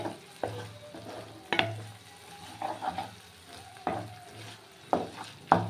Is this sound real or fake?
real